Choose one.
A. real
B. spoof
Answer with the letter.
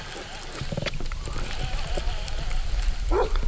A